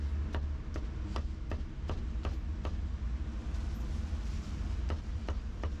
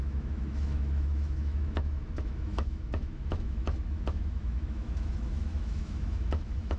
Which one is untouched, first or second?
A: first